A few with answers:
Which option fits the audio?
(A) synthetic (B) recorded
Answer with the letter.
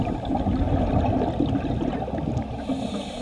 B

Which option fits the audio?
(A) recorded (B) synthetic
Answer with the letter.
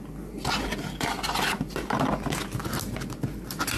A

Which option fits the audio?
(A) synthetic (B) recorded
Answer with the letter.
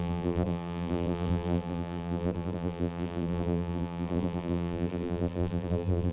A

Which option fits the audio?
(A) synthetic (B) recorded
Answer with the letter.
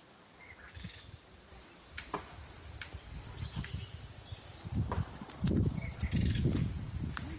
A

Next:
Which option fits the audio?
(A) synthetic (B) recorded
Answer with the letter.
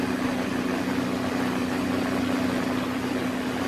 B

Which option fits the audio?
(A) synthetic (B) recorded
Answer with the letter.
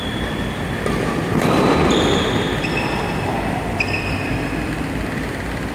B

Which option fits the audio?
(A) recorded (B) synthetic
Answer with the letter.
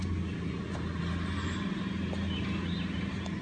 A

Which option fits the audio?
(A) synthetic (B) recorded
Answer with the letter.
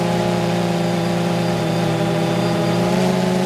A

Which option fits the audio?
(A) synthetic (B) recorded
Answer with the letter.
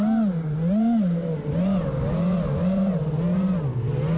B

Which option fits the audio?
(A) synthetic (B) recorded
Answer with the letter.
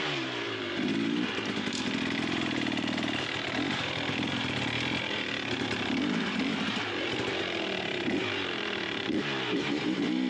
A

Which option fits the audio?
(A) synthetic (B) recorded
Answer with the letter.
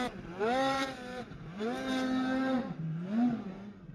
A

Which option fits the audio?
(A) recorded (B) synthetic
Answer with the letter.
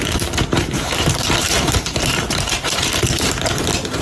B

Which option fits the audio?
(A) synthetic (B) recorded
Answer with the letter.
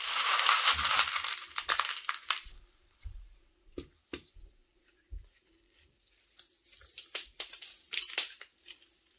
A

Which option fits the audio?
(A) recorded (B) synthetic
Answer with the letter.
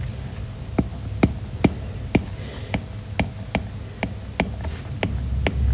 A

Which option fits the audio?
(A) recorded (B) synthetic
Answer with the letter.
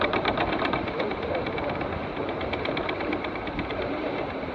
B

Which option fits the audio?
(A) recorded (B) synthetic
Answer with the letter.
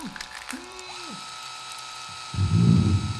B